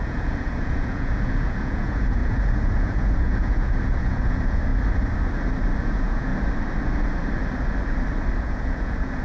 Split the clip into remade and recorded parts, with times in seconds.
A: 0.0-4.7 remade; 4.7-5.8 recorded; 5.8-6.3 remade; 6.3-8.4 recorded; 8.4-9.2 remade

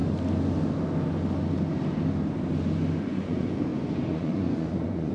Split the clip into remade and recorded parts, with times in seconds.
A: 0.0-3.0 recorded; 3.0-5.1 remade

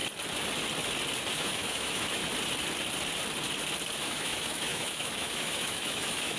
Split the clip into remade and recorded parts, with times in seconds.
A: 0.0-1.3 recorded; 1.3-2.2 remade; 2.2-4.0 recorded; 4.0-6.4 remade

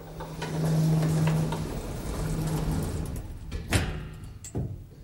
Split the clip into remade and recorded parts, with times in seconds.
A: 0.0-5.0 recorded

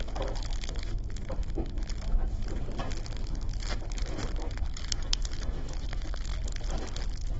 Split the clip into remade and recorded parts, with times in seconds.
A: 0.0-2.4 remade; 2.4-3.0 recorded; 3.0-6.3 remade; 6.3-7.4 recorded

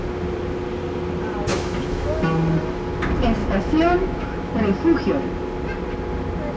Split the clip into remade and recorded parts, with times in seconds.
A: 0.0-1.5 recorded; 1.5-2.1 remade; 2.1-3.4 recorded; 3.4-4.5 remade; 4.5-6.6 recorded

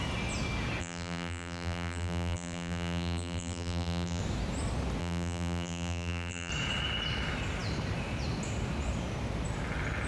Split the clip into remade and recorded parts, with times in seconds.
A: 0.0-0.8 recorded; 0.8-4.2 remade; 4.2-5.0 recorded; 5.0-6.5 remade; 6.5-10.1 recorded

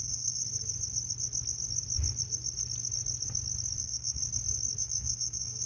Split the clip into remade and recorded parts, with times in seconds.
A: 0.0-0.4 remade; 0.4-3.8 recorded; 3.8-4.2 remade; 4.2-4.8 recorded; 4.8-5.7 remade